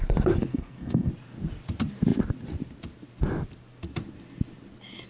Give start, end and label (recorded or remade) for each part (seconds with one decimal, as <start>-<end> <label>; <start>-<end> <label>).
0.0-0.5 recorded; 0.5-1.1 remade; 1.1-5.1 recorded